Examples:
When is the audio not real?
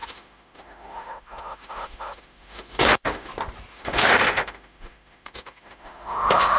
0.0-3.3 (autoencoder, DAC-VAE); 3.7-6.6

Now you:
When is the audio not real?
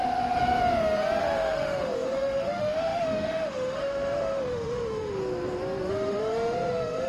1.2-5.2 (autoencoder, DAC-VAE); 5.9-7.1